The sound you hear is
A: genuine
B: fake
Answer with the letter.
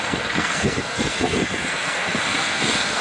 B